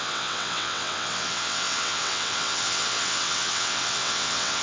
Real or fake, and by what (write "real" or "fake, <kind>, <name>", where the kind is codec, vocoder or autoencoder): fake, vocoder, WaveNeXt